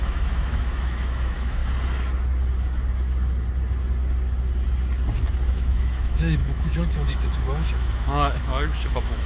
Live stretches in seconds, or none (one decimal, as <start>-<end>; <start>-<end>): 1.6-5.5